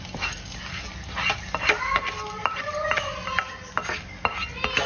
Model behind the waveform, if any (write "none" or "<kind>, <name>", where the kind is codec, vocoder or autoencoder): none